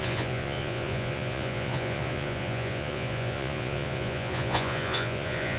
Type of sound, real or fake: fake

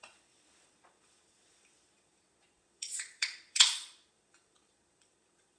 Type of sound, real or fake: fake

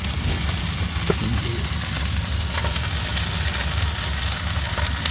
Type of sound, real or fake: real